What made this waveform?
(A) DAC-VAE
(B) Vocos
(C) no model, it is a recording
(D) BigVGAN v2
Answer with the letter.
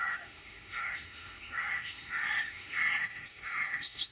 A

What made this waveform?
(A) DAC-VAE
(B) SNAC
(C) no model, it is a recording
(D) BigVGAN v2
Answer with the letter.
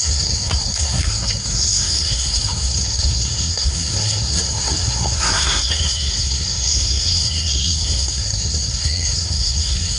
B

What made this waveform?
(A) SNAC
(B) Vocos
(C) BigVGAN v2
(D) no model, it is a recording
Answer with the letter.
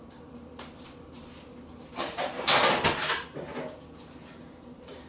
C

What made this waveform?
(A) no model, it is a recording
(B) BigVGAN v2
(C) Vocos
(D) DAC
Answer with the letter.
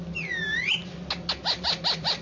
A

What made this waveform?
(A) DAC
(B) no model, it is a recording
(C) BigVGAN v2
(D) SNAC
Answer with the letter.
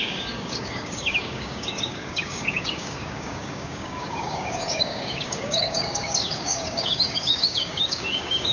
A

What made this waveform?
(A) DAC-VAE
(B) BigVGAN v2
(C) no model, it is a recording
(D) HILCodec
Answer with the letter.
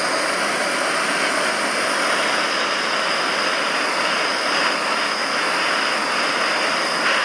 C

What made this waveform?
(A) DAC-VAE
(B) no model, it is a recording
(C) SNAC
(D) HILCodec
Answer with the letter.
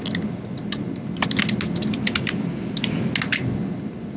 B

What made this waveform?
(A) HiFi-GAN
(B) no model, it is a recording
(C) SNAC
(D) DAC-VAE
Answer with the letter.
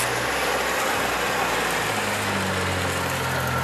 B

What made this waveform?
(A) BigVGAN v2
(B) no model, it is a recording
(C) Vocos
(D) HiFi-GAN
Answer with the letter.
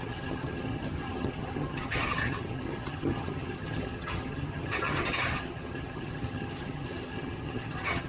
D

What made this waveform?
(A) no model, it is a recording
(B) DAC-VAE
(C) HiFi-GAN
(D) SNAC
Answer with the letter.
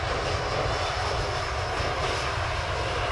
A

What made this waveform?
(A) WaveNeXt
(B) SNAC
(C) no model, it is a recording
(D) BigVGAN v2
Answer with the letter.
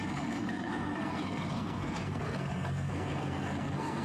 B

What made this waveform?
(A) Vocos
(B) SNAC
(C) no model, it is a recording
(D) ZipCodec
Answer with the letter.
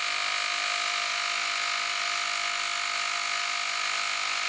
C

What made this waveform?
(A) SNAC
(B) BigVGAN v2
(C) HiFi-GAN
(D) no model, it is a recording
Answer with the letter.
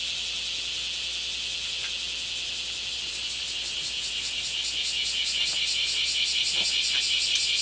D